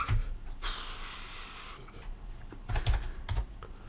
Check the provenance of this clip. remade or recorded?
recorded